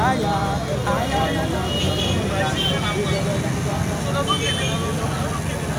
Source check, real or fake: real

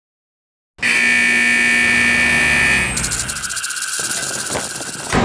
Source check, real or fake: real